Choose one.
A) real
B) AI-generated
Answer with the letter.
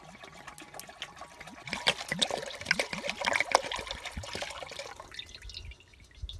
A